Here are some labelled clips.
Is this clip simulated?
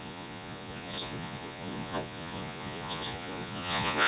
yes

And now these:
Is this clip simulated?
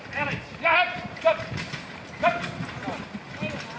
no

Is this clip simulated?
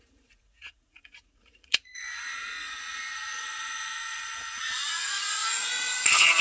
yes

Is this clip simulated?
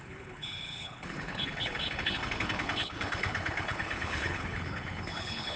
yes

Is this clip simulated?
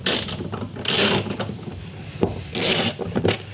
no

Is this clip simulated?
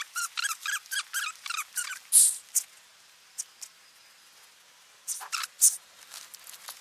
no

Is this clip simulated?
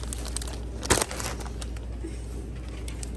no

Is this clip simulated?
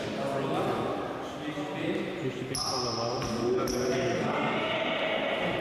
no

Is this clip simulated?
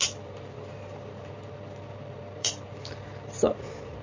yes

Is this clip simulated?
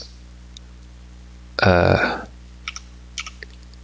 no